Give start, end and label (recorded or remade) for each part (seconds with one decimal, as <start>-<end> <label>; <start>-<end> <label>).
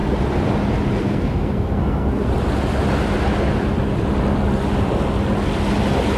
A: 0.0-1.0 recorded; 1.0-2.3 remade; 2.3-6.2 recorded